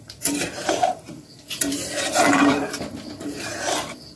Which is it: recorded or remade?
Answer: remade